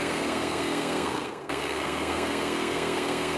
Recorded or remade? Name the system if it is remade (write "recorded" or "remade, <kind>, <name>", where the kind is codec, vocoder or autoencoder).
remade, codec, SNAC